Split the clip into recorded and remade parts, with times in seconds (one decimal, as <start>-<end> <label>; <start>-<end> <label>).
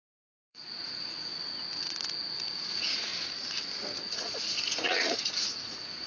0.0-1.3 remade; 1.3-1.8 recorded; 1.8-3.1 remade; 3.1-4.0 recorded; 4.0-6.1 remade